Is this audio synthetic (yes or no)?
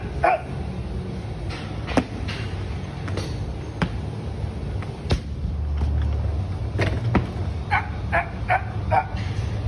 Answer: no